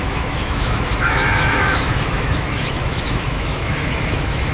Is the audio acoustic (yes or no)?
no